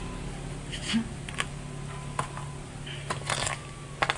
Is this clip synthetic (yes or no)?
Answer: no